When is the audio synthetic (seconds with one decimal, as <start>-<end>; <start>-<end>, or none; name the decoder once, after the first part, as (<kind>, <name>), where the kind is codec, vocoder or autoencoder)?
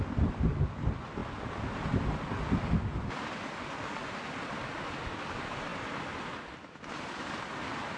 none